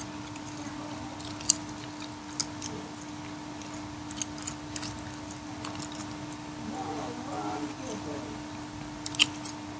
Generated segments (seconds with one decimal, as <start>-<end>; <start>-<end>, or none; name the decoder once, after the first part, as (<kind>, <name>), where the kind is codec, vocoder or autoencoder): none